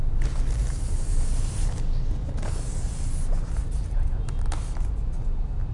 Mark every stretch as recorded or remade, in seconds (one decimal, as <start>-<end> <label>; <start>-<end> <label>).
0.0-0.6 recorded; 0.6-1.7 remade; 1.7-3.6 recorded; 3.6-4.6 remade; 4.6-5.7 recorded